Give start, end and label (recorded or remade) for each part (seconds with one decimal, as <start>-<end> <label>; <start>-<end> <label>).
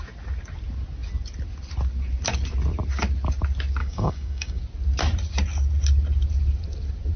0.0-3.8 recorded; 3.8-4.6 remade; 4.6-7.2 recorded